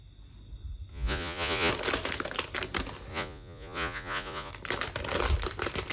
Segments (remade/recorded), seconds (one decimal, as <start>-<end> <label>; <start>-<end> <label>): 0.0-0.9 recorded; 0.9-1.7 remade; 1.7-3.1 recorded; 3.1-4.5 remade; 4.5-5.9 recorded